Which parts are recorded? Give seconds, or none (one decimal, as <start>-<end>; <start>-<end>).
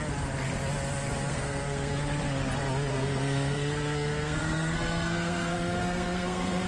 0.0-1.3; 1.9-2.9